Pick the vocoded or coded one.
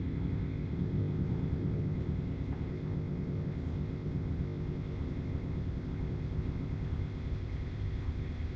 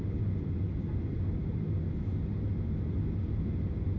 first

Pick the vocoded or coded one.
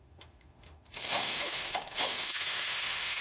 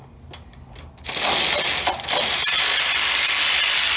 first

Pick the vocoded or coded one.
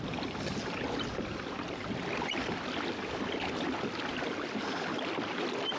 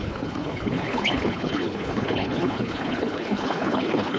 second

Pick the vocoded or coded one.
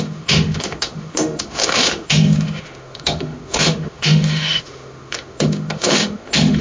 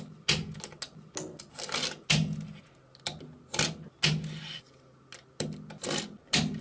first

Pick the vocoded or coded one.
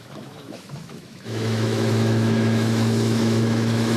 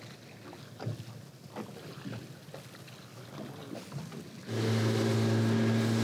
first